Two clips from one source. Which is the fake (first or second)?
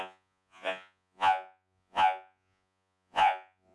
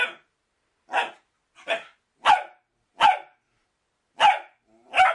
first